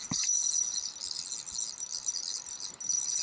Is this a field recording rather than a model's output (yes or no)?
yes